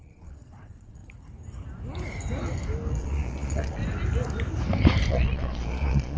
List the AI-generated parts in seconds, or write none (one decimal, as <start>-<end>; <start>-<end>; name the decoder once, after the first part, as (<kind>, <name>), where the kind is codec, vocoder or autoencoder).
0.0-1.0 (vocoder, Vocos); 2.9-3.8; 5.1-6.2